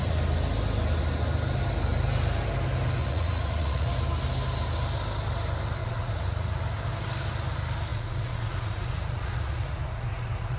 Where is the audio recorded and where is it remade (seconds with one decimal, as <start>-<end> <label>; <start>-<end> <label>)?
0.0-3.0 recorded; 3.0-4.0 remade; 4.0-5.8 recorded; 5.8-6.6 remade; 6.6-7.9 recorded; 7.9-10.6 remade